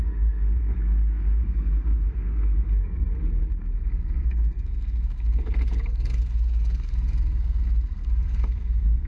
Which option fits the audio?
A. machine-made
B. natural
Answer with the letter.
A